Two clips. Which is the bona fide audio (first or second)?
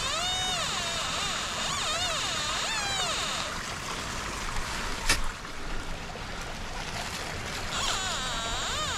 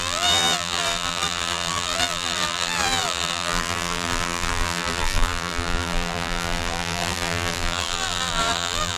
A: first